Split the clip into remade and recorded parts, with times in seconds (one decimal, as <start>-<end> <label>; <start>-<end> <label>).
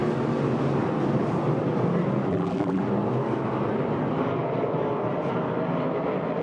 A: 0.0-2.3 recorded; 2.3-2.8 remade; 2.8-6.4 recorded